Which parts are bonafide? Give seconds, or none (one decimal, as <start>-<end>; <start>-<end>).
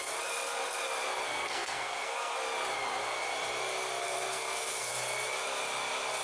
0.0-1.2; 2.4-4.0; 4.9-6.2